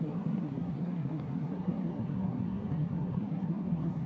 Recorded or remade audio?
remade